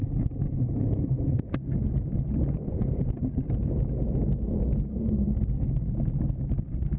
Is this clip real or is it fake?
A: real